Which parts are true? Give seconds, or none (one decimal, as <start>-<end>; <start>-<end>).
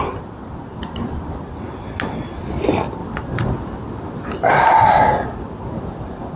0.0-6.4